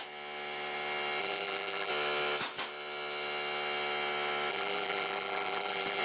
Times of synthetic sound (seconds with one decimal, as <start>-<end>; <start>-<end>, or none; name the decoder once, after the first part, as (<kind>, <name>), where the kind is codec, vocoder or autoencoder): 1.2-1.9 (vocoder, BigVGAN v2); 4.5-6.0